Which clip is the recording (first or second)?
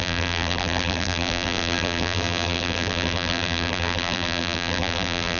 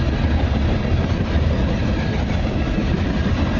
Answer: second